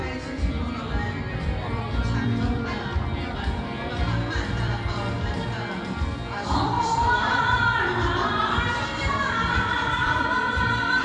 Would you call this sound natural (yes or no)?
no